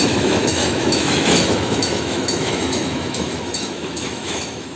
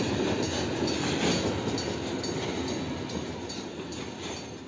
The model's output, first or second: first